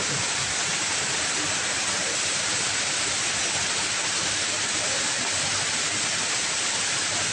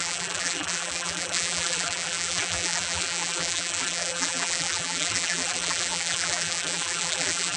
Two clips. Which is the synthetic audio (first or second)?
second